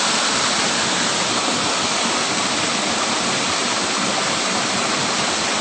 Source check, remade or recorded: recorded